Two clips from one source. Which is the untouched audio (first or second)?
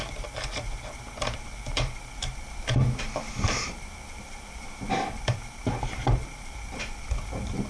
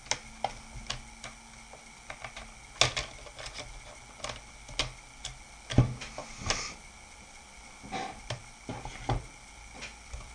second